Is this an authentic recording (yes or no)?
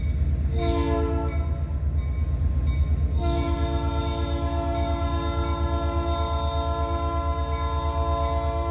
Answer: yes